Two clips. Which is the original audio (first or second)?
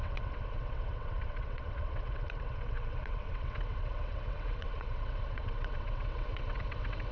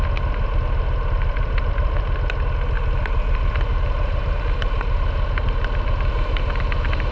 second